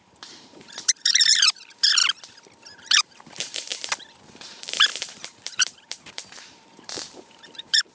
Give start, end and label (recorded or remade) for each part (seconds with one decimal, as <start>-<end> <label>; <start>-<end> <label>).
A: 0.0-2.0 remade; 2.0-2.6 recorded; 2.6-3.7 remade; 3.7-4.2 recorded; 4.2-7.9 remade